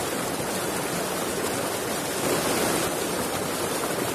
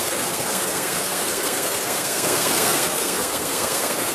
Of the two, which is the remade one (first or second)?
second